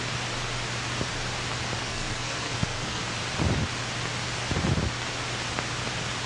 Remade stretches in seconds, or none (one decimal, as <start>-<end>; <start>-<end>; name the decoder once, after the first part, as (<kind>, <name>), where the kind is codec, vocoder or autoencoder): 1.8-3.0 (codec, SNAC)